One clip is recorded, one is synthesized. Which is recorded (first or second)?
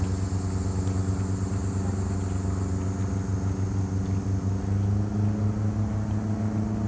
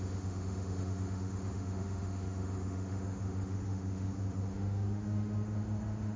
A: first